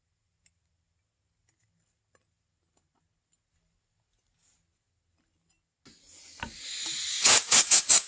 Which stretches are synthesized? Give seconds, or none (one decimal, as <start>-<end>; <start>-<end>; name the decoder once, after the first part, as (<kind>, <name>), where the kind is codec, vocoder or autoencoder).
7.1-8.1 (codec, DAC)